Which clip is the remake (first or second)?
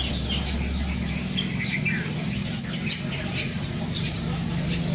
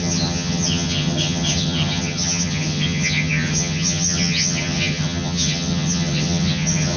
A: second